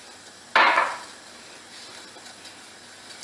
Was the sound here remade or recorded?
recorded